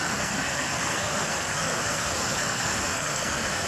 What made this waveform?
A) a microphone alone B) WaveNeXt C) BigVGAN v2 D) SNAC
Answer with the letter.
D